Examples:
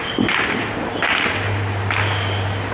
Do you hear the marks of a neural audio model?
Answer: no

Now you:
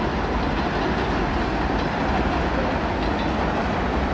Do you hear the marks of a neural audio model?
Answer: no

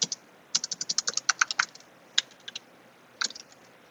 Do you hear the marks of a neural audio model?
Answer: no